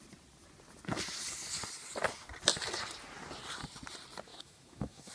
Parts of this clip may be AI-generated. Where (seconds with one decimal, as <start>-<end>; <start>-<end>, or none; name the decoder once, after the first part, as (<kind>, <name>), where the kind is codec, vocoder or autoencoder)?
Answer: 4.3-5.1 (autoencoder, DAC-VAE)